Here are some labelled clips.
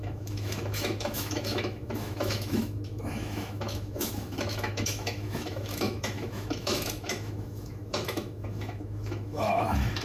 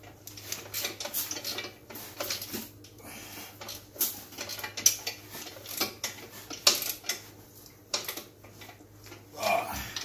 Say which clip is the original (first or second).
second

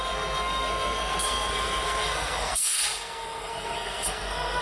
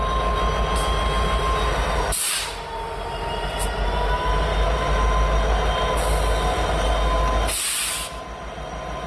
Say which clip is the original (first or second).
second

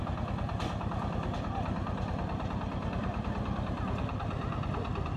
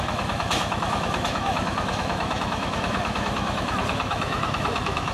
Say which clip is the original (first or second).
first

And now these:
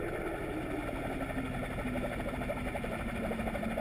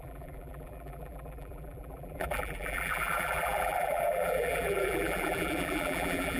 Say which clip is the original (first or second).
first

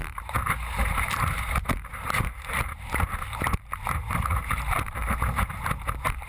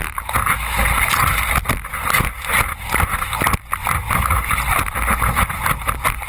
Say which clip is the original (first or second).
second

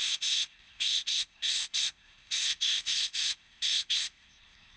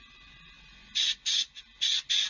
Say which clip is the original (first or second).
second